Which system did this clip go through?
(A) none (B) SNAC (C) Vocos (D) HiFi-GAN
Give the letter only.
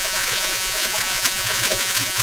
C